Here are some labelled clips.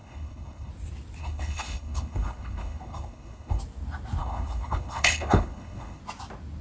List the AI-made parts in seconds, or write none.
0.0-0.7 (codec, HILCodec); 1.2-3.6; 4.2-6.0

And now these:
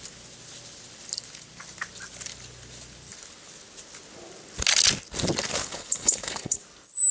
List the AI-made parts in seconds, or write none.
5.6-6.6 (codec, HILCodec)

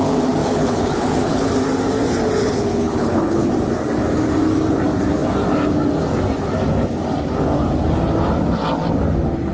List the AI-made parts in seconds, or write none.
0.4-1.5 (codec, HILCodec); 2.4-3.5